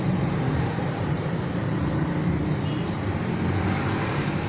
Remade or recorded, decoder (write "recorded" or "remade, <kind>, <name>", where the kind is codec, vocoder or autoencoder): remade, vocoder, BigVGAN v2